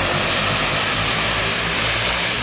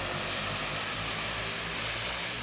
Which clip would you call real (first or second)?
second